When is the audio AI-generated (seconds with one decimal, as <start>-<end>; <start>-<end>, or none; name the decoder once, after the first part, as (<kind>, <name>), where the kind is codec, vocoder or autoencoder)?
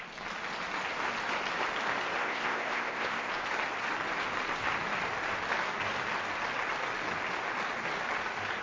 2.2-3.3 (codec, ZipCodec)